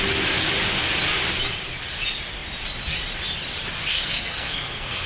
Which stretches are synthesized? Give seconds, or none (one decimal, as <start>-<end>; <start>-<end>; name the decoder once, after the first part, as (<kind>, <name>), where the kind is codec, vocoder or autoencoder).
3.9-5.1 (codec, SNAC)